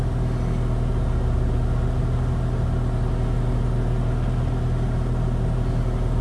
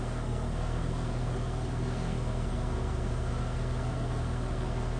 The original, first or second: first